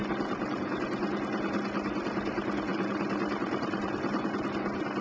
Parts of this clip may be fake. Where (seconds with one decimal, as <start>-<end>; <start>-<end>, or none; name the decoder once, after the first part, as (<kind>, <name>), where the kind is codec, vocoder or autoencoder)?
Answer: 2.7-4.3 (vocoder, BigVGAN v2)